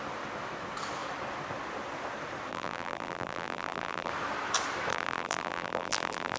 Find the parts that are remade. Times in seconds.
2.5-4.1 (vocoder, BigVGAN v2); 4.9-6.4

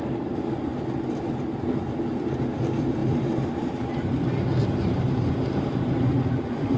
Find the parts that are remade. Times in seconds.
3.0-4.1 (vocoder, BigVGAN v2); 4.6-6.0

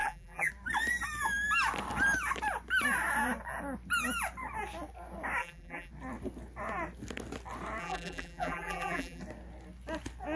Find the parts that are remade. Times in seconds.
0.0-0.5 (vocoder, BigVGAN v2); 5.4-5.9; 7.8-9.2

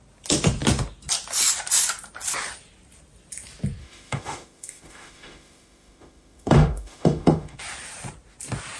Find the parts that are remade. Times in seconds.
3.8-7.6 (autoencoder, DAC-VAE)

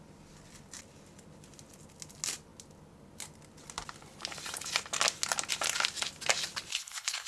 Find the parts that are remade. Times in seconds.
6.7-7.3 (codec, HILCodec)

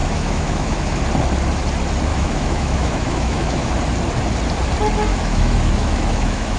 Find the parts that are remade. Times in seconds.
0.0-1.0 (autoencoder, DAC-VAE); 2.1-3.7; 5.1-6.6

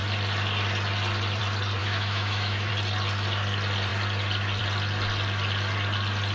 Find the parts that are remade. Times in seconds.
1.8-2.7 (autoencoder, DAC-VAE)

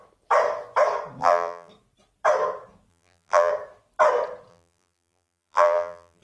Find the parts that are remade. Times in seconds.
1.2-1.7 (vocoder, BigVGAN v2); 2.9-3.5; 4.5-6.2